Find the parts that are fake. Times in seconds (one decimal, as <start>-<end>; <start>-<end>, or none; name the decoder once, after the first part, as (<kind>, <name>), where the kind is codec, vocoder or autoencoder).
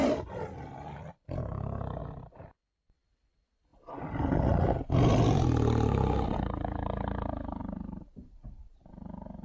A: 7.6-8.9 (vocoder, BigVGAN v2)